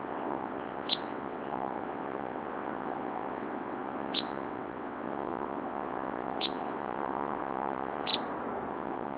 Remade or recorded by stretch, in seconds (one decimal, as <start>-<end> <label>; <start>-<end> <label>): 0.0-8.1 remade; 8.1-8.7 recorded; 8.7-9.2 remade